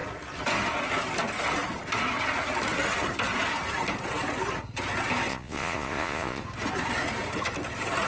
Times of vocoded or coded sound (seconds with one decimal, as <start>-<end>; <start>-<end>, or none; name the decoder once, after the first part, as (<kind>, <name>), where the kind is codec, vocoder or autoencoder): 5.3-6.4 (vocoder, Vocos)